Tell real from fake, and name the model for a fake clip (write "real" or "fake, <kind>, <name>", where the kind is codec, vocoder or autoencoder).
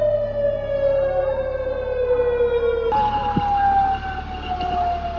real